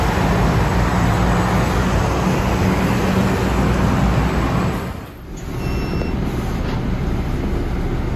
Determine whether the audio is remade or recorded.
recorded